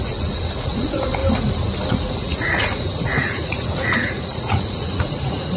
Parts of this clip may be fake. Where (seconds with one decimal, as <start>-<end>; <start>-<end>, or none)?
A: 0.0-1.2; 1.9-5.6